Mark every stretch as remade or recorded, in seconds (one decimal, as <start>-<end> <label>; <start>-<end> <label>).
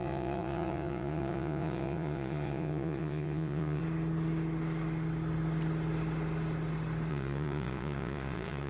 0.0-3.8 remade; 3.8-7.1 recorded; 7.1-8.7 remade